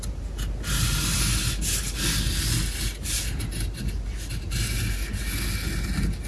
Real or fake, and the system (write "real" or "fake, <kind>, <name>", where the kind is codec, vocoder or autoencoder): real